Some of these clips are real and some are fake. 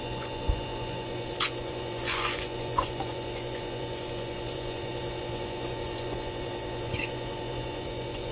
fake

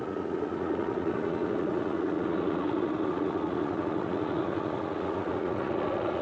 fake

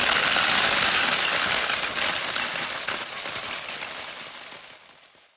real